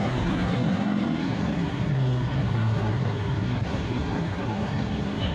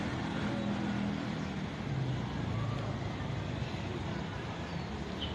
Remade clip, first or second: first